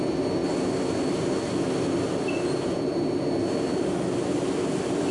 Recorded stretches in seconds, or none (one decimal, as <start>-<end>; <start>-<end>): 0.0-5.1